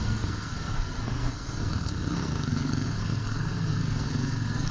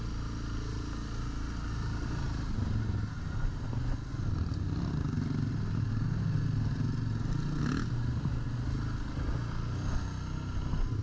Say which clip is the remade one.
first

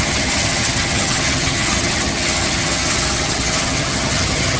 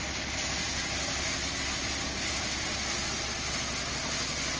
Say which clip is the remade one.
first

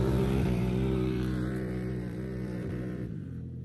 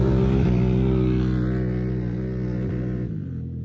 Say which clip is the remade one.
first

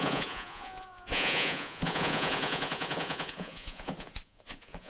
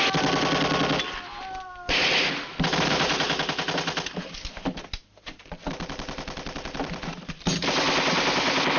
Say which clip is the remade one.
first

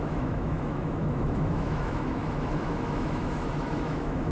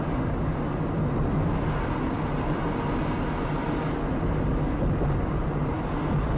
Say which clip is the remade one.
first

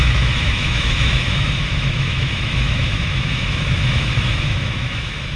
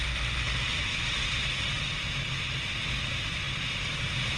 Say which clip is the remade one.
first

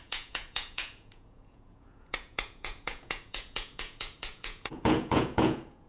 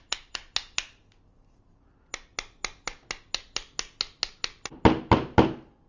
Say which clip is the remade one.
first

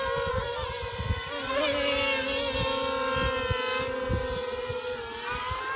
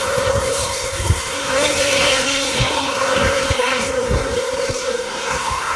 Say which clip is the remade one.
second